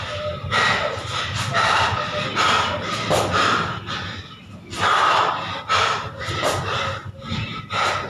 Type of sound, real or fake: real